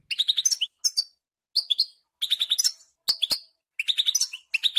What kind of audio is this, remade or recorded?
recorded